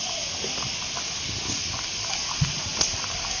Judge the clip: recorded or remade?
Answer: recorded